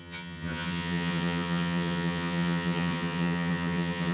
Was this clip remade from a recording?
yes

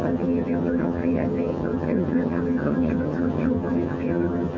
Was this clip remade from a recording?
yes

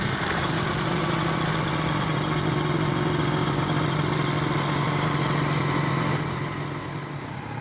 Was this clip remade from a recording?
no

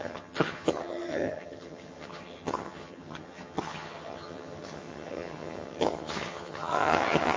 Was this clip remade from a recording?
yes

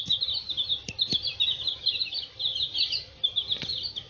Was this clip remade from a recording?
no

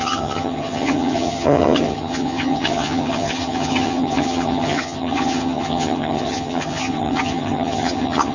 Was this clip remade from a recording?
yes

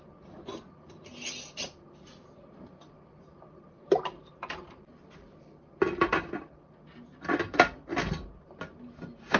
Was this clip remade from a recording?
no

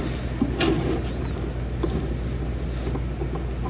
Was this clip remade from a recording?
no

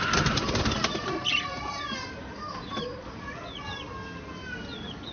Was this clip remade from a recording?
no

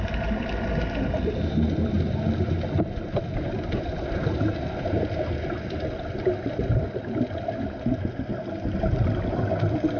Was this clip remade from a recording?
no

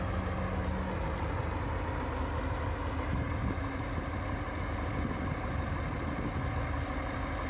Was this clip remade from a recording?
no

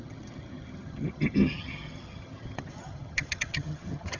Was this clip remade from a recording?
yes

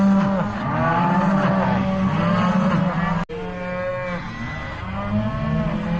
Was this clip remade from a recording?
no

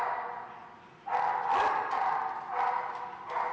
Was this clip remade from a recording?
no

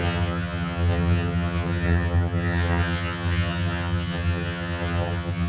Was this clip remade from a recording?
yes